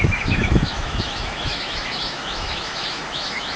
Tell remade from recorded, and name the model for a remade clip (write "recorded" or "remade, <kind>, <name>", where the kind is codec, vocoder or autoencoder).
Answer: remade, autoencoder, DAC-VAE